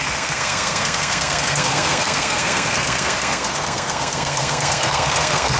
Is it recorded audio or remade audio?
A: remade